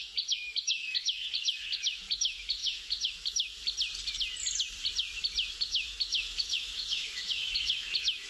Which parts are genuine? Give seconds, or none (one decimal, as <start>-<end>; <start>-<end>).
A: 3.5-5.5

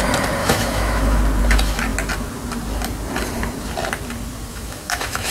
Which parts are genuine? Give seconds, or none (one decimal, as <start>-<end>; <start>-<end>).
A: 0.0-0.4; 1.2-4.5

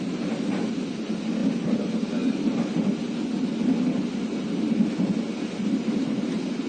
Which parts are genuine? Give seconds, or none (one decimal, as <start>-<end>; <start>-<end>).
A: 0.0-6.7

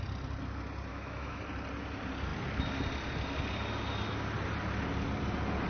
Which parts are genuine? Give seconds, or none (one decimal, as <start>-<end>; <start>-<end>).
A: 0.0-0.9; 1.4-5.7

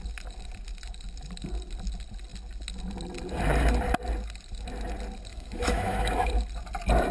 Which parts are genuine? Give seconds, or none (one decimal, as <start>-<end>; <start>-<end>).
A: 0.0-5.3; 6.3-7.1

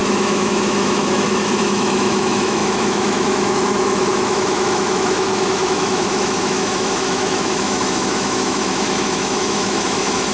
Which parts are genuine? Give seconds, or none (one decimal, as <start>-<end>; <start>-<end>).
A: none

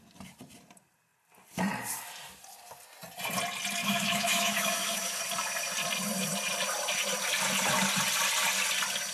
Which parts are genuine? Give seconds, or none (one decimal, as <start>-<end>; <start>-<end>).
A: 0.0-3.8; 5.2-9.1